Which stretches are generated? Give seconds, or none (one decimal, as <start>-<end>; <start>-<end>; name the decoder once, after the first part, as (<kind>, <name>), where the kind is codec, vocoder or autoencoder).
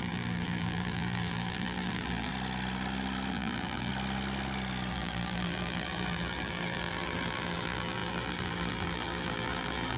0.0-2.3 (vocoder, BigVGAN v2); 3.3-3.9; 4.9-10.0